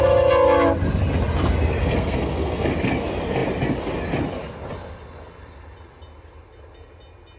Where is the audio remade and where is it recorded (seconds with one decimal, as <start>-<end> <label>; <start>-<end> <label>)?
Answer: 0.0-1.8 recorded; 1.8-2.7 remade; 2.7-7.4 recorded